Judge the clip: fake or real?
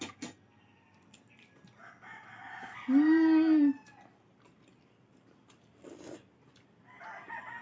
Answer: real